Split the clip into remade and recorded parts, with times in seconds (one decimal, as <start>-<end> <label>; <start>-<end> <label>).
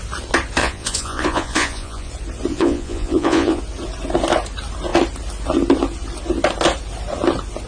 0.0-0.6 recorded; 0.6-2.1 remade; 2.1-2.5 recorded; 2.5-3.6 remade; 3.6-7.7 recorded